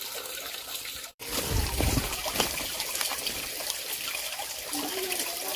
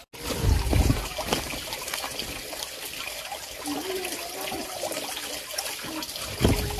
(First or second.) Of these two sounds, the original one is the second